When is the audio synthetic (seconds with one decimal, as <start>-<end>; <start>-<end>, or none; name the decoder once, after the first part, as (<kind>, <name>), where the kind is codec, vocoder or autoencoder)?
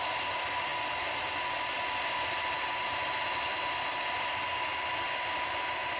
none